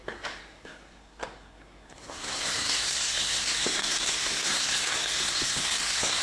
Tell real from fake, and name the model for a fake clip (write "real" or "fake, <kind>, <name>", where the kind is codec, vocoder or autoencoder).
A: fake, codec, SNAC